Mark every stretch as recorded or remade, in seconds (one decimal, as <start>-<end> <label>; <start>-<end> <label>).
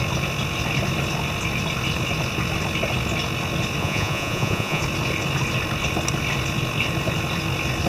0.0-3.8 recorded; 3.8-4.8 remade; 4.8-7.9 recorded